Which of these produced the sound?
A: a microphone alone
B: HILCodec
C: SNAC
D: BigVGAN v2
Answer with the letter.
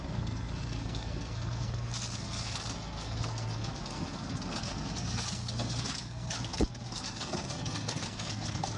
C